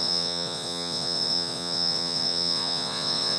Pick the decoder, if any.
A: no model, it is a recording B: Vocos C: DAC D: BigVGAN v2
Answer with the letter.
B